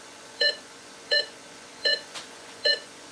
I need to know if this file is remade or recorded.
remade